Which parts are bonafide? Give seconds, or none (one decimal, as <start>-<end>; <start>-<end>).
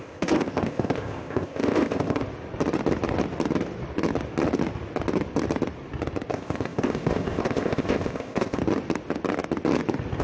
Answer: 2.2-6.3; 8.6-10.2